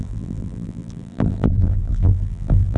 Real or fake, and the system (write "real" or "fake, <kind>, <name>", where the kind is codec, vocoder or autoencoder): fake, vocoder, BigVGAN v2